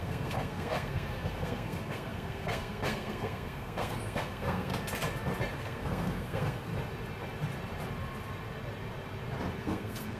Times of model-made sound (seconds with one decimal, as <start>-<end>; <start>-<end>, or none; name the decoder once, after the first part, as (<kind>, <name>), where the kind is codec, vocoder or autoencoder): 0.0-4.7 (codec, SNAC); 5.5-6.7; 9.6-10.2